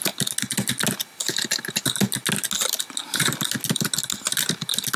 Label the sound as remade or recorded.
recorded